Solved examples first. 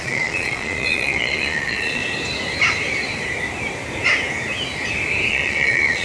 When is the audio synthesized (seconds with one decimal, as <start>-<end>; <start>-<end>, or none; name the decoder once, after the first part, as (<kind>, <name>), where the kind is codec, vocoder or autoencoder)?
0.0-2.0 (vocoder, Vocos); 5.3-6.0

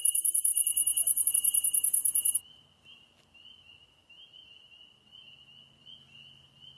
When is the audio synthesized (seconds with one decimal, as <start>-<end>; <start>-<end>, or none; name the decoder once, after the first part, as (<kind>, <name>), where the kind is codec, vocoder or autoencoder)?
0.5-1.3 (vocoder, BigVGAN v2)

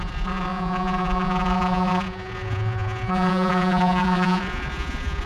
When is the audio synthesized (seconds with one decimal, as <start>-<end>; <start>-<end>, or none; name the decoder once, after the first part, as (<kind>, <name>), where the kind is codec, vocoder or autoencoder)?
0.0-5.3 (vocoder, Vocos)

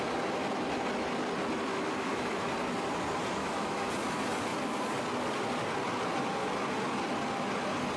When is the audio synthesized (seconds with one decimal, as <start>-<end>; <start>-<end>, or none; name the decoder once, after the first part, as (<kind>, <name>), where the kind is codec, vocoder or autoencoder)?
1.7-2.5 (autoencoder, DAC-VAE); 3.4-3.9